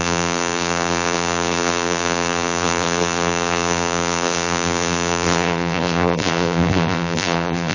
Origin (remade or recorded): remade